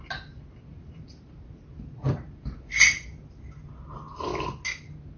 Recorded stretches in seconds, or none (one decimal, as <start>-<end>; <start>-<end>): 0.0-0.7; 3.8-5.2